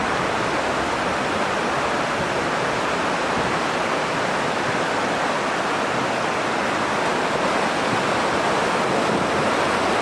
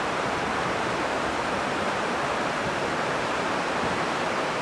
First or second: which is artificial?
second